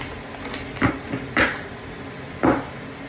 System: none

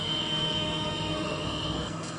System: codec, SNAC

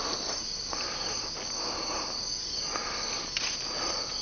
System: none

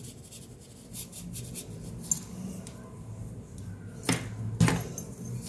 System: none